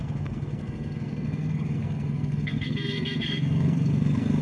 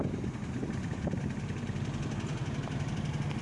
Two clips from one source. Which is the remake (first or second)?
first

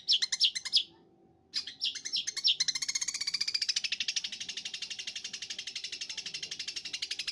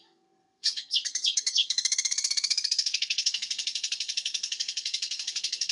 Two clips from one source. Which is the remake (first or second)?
second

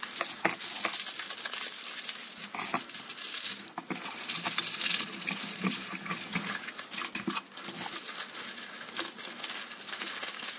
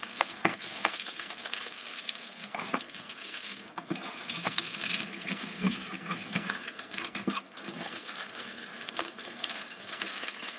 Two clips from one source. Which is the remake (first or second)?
second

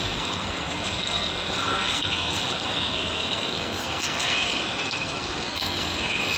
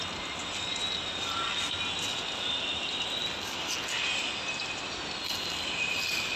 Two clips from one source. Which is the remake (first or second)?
first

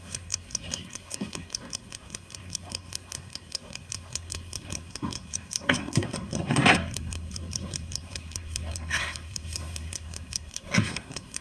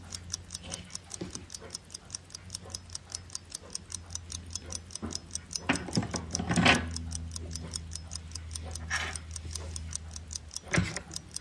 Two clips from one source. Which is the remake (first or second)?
first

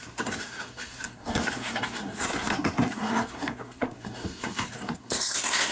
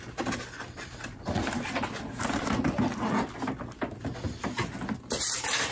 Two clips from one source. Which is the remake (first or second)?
first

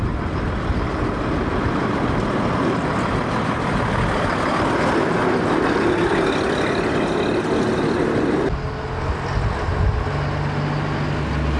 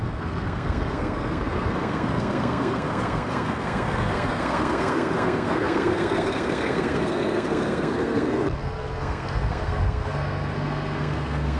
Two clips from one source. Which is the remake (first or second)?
second